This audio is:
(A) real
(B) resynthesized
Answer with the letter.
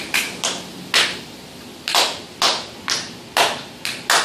A